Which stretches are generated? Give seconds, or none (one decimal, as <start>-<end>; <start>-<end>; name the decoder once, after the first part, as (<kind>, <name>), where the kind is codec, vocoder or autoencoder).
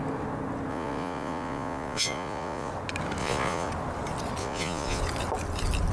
0.7-2.7 (vocoder, Vocos); 3.2-3.7; 4.4-5.0